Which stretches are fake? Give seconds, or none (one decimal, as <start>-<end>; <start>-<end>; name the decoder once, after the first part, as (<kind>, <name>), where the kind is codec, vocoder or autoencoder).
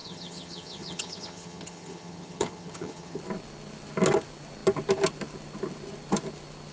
0.0-3.2 (vocoder, HiFi-GAN)